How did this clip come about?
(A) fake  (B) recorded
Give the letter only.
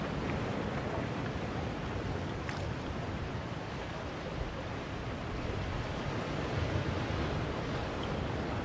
B